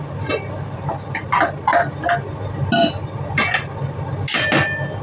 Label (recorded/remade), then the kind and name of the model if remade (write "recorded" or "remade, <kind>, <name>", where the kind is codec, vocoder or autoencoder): recorded